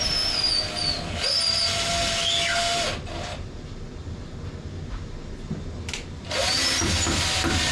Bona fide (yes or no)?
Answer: yes